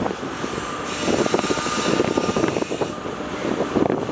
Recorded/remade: recorded